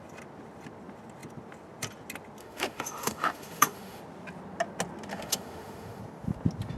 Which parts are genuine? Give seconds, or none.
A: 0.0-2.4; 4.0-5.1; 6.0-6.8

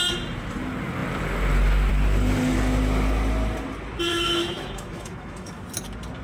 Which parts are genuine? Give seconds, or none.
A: 0.0-4.1; 5.6-6.2

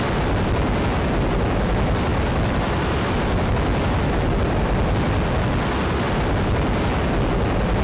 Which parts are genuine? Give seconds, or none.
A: 0.0-7.8

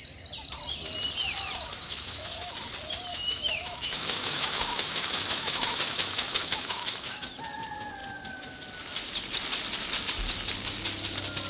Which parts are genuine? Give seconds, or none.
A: 0.0-1.8; 2.5-3.1; 7.3-11.5